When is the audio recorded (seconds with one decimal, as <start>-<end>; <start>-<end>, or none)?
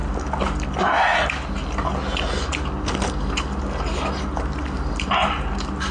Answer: 0.0-5.9